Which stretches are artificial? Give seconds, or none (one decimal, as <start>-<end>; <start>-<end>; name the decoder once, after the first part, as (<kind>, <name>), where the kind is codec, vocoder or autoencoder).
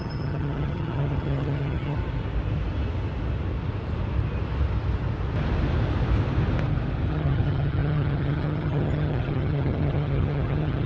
0.0-2.0 (vocoder, HiFi-GAN); 7.1-10.9